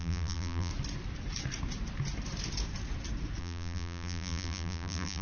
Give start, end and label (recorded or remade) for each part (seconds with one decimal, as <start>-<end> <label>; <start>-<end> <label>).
0.0-0.7 remade; 0.7-3.4 recorded; 3.4-5.2 remade